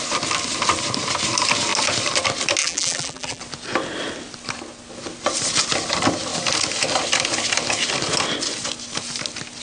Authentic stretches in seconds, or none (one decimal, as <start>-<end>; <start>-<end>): 0.0-2.6; 3.4-9.6